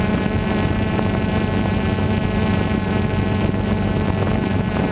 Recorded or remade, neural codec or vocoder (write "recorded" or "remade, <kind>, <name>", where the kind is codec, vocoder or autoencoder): recorded